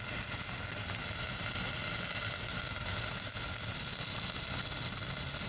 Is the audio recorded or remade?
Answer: recorded